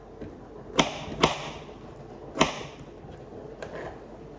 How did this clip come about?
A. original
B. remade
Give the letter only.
A